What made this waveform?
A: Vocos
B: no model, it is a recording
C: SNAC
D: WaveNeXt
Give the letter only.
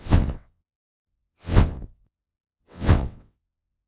D